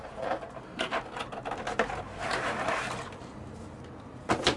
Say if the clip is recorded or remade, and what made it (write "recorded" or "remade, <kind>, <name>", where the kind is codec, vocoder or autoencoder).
recorded